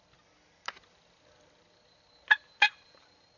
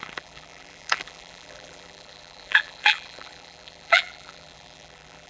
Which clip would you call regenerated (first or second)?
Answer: second